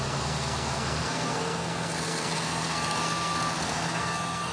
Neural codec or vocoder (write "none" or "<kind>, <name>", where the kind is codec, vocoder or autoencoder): codec, SNAC